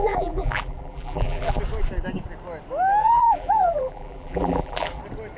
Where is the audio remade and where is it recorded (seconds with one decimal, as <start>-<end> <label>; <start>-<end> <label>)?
0.0-1.6 remade; 1.6-3.0 recorded; 3.0-5.0 remade; 5.0-5.4 recorded